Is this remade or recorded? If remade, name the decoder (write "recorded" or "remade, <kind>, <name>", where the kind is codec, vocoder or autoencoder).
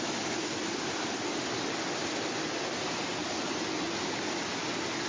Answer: recorded